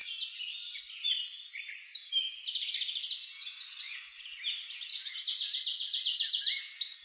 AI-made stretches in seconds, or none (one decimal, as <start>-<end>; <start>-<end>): none